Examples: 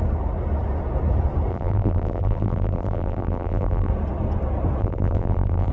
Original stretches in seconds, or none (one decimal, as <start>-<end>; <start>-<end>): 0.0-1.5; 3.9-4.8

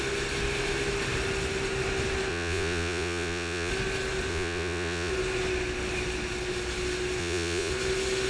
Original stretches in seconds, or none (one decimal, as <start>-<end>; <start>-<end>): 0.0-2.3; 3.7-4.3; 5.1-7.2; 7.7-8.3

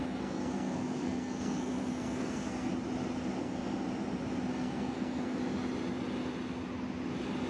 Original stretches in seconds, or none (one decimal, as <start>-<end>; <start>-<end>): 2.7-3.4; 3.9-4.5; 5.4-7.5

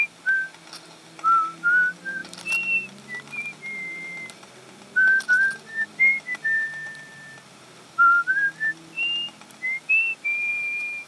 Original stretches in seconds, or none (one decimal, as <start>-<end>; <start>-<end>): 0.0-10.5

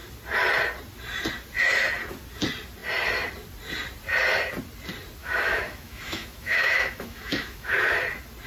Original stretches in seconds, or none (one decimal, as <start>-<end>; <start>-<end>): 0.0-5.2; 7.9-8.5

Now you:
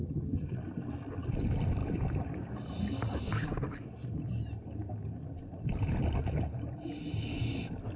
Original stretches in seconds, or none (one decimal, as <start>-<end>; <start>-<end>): 0.5-8.0

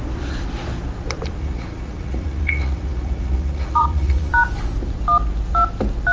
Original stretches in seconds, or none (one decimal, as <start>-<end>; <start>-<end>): 0.0-1.4; 4.3-6.1